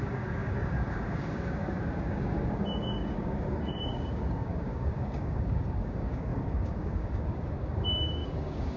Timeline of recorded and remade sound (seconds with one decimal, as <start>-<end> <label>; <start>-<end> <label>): 0.0-8.8 remade